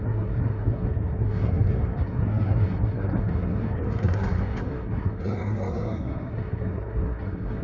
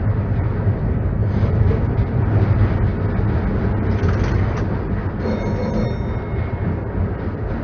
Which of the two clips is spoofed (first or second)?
first